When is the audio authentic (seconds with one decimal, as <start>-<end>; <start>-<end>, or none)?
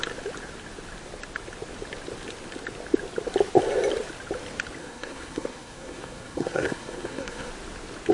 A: 0.0-4.8; 7.5-8.1